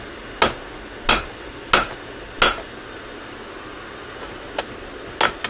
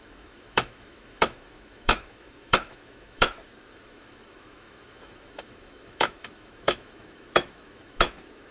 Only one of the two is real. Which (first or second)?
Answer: first